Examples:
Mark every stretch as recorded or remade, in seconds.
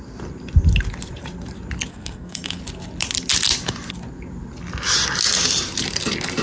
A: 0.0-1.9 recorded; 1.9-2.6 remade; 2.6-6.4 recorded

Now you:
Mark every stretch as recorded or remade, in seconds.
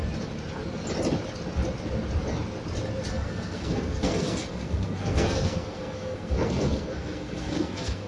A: 0.0-3.1 recorded; 3.1-8.1 remade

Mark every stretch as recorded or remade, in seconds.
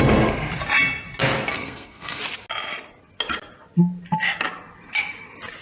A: 0.0-1.5 recorded; 1.5-2.2 remade; 2.2-5.6 recorded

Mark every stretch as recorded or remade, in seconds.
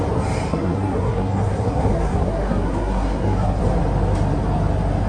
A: 0.0-0.5 recorded; 0.5-3.6 remade; 3.6-5.1 recorded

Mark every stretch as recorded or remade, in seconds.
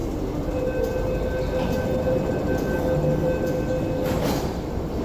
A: 0.0-5.0 recorded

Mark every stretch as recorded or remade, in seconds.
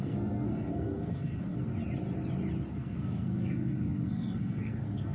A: 0.0-1.7 remade; 1.7-2.7 recorded; 2.7-5.1 remade